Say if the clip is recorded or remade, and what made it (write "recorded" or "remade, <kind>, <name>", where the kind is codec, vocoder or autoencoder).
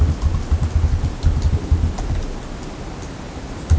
recorded